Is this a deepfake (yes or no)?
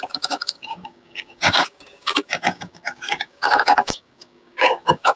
yes